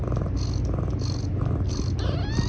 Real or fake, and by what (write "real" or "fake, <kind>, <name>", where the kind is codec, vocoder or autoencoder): real